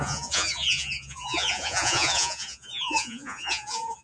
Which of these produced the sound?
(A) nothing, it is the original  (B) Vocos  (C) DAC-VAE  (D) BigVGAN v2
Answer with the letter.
B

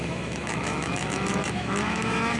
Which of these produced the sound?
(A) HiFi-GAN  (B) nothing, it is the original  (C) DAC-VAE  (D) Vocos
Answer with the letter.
C